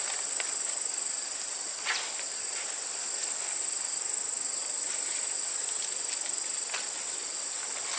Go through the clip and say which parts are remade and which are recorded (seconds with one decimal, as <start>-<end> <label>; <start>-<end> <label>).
0.0-8.0 recorded